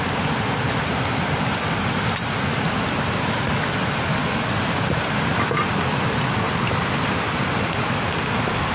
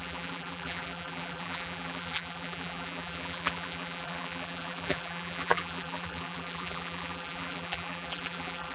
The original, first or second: first